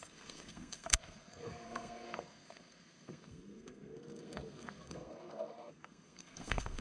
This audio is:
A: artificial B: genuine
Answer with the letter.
A